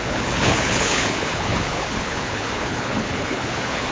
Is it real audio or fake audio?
fake